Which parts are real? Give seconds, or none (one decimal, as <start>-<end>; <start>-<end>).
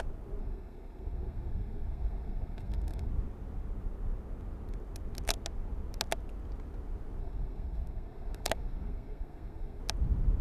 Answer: 0.0-0.4; 3.1-7.2; 9.8-10.4